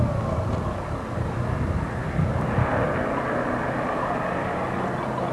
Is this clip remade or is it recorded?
recorded